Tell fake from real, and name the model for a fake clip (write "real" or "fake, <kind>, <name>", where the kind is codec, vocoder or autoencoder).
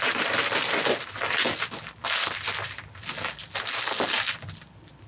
real